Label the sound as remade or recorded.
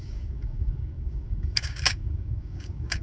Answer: remade